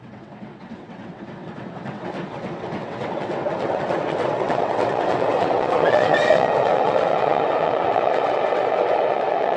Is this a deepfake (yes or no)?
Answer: yes